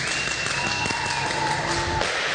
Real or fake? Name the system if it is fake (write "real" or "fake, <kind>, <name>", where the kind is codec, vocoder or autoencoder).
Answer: real